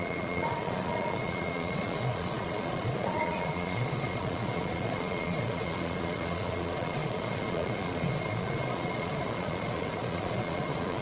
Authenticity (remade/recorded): remade